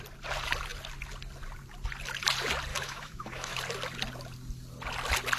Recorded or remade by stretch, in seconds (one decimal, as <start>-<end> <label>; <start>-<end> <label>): 0.0-2.7 recorded; 2.7-3.6 remade; 3.6-5.4 recorded